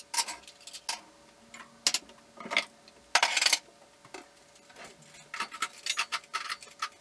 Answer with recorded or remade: recorded